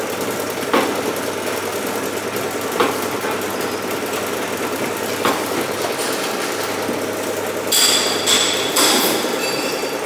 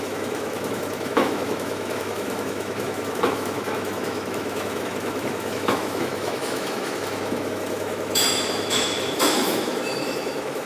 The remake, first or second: second